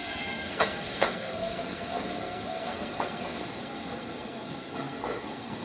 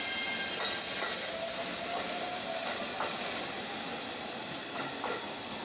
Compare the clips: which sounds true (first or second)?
second